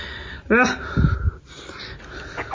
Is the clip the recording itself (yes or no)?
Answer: yes